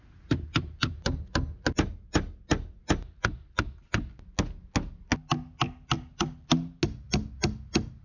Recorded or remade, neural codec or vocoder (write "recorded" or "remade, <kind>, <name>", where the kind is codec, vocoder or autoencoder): recorded